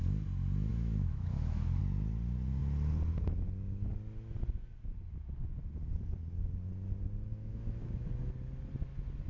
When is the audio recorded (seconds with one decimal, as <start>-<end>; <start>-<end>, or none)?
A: 0.0-0.7; 1.8-7.3; 8.3-9.3